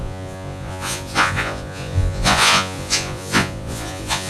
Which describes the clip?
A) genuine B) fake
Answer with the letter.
B